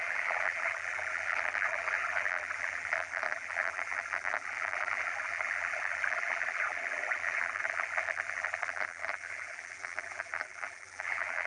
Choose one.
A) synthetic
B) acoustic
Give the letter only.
A